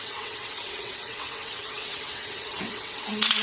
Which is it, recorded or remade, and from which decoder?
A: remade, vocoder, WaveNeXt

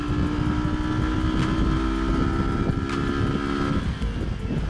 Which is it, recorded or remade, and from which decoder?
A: recorded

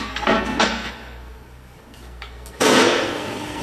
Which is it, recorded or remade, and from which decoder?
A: remade, codec, SNAC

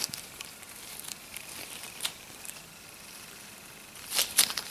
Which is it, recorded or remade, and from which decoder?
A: remade, vocoder, BigVGAN v2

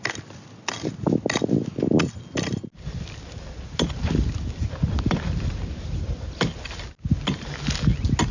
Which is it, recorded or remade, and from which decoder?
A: recorded